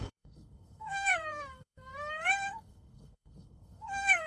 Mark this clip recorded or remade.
remade